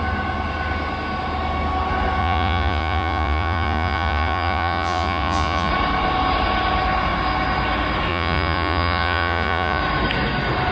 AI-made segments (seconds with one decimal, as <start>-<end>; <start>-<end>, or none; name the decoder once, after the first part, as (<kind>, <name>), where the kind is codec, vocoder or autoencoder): 2.2-5.7 (vocoder, Vocos); 8.1-9.8

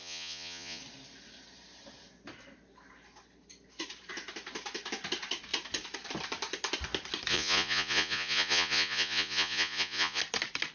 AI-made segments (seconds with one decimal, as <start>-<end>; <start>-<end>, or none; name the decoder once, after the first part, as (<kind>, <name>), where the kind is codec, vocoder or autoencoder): 0.0-0.8 (vocoder, Vocos); 7.3-10.2

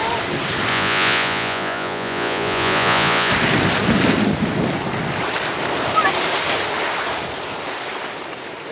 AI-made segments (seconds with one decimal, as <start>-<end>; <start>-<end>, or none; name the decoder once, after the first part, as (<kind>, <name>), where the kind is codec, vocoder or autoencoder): 0.7-3.3 (vocoder, Vocos)

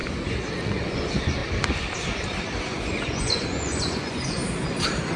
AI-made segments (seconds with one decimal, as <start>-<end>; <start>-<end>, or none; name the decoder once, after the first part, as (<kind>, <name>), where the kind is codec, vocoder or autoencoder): 0.6-1.4 (vocoder, Vocos); 2.6-4.4

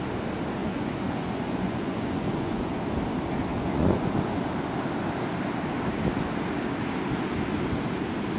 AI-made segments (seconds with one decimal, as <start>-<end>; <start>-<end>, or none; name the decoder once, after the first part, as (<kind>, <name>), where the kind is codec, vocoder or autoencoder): 0.6-2.8 (vocoder, Vocos); 3.5-4.1

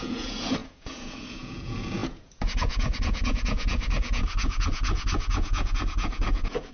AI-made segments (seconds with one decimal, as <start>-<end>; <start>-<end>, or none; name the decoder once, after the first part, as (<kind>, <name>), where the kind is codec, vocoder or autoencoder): 0.0-6.7 (vocoder, Vocos)